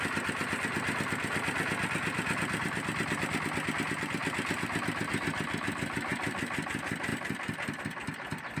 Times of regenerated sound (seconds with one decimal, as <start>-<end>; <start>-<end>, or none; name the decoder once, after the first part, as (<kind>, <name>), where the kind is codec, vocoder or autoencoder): none